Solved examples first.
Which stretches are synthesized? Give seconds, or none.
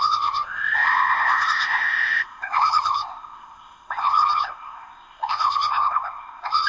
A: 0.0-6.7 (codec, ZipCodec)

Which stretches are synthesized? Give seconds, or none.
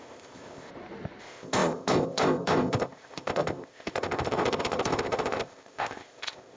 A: 0.0-0.7 (codec, ZipCodec); 1.2-6.6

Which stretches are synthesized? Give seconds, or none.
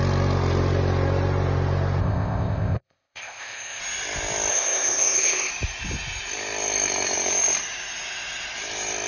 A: 2.0-3.8 (codec, ZipCodec); 4.5-5.5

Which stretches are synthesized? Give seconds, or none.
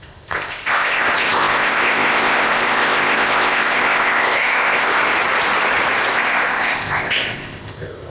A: 0.0-5.0 (codec, ZipCodec); 6.1-8.1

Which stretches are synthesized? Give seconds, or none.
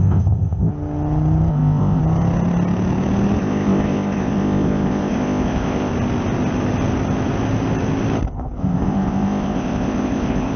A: 0.0-0.7 (codec, ZipCodec); 1.5-2.0; 3.4-5.9; 8.6-10.6